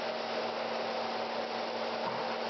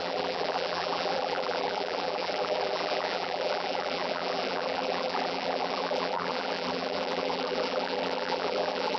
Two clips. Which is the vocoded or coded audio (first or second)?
second